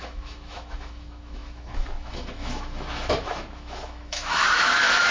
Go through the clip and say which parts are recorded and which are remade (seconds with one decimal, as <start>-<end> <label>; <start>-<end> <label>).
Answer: 0.0-5.1 remade